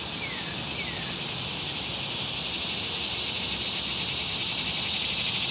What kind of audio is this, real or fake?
real